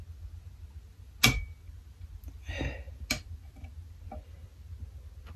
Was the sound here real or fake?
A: real